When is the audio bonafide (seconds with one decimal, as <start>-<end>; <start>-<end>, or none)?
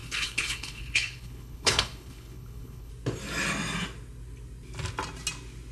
2.9-5.7